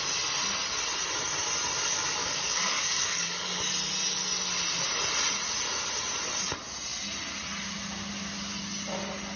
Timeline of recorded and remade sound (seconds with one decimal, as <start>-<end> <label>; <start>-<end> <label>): 0.0-2.2 recorded; 2.2-3.7 remade; 3.7-9.4 recorded